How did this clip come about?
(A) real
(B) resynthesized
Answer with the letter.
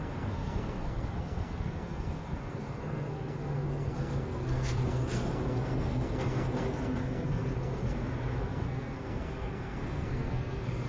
B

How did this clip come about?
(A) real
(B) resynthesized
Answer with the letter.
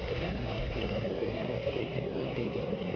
B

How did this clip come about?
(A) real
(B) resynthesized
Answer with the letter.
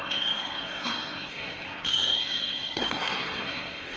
B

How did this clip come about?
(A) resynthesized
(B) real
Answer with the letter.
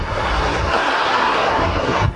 A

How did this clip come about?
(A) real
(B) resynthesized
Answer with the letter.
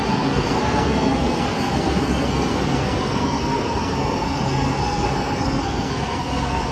B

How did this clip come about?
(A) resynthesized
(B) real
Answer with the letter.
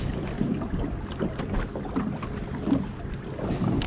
B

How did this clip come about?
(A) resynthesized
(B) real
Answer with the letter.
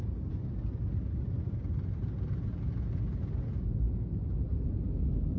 B